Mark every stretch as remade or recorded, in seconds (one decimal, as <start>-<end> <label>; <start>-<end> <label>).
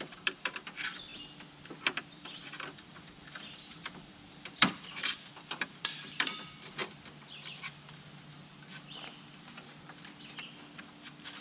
0.0-1.1 remade; 1.1-2.0 recorded; 2.0-6.8 remade; 6.8-10.8 recorded; 10.8-11.4 remade